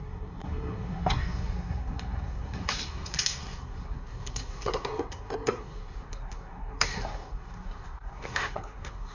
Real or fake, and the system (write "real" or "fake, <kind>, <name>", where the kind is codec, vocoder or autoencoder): fake, codec, SNAC